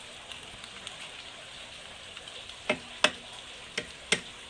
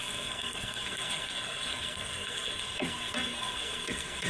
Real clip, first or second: first